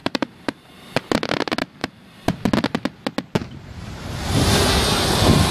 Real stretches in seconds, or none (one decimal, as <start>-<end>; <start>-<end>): 0.9-1.8; 2.5-3.4; 4.6-5.5